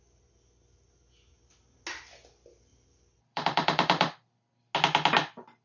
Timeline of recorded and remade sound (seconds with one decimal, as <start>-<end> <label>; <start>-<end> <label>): 0.0-2.7 recorded; 2.7-4.5 remade; 4.5-5.6 recorded